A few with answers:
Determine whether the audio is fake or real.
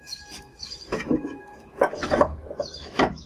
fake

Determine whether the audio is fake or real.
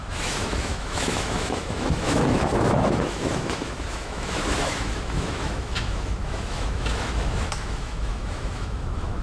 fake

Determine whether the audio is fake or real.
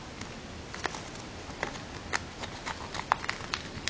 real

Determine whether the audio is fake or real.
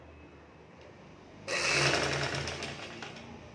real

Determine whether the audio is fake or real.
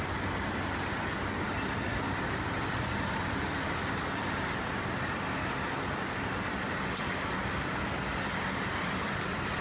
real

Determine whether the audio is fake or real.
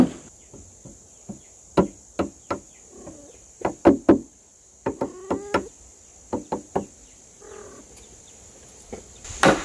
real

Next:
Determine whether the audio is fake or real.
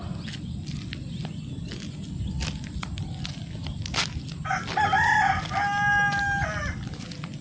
real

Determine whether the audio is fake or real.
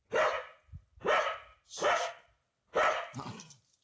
real